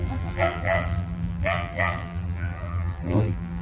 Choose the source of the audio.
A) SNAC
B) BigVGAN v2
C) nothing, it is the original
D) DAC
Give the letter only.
B